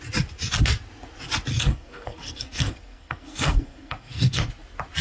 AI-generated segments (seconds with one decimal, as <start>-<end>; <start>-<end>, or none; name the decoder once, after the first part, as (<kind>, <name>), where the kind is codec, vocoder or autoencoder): 1.5-4.5 (codec, SNAC)